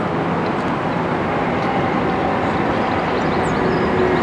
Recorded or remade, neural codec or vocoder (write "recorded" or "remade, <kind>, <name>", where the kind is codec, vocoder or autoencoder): recorded